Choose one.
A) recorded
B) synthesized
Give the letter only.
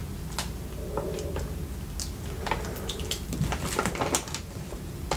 A